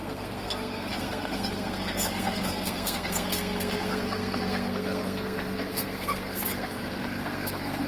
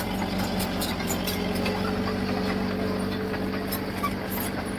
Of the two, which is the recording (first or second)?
second